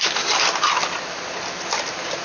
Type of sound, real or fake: real